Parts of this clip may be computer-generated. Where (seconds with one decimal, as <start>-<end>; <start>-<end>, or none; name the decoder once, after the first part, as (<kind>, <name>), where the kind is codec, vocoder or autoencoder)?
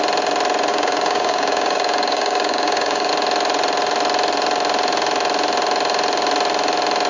0.7-3.1 (codec, DAC)